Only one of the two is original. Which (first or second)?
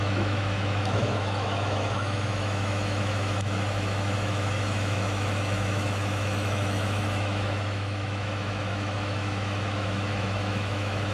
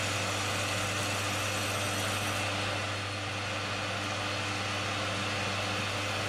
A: second